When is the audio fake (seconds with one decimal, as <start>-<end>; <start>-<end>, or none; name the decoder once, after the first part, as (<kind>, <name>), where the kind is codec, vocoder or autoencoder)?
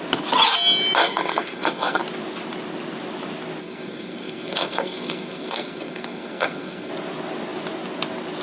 1.0-2.0 (codec, SNAC); 3.6-6.9